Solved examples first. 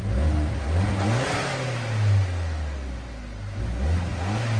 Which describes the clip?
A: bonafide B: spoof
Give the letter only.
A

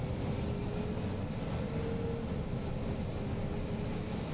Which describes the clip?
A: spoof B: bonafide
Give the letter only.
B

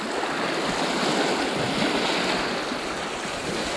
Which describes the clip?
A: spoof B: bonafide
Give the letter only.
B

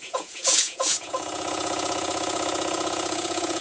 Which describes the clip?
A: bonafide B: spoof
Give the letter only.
B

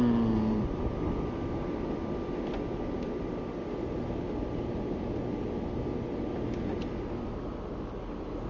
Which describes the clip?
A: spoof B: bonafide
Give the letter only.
B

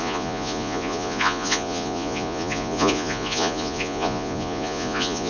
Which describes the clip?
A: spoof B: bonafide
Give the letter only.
A